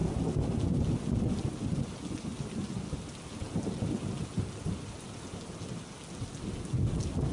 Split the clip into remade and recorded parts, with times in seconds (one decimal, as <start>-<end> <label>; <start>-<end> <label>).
0.0-7.3 recorded